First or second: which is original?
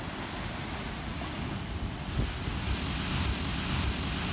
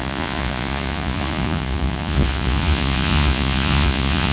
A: first